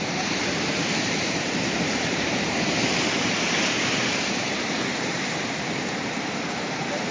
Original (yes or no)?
no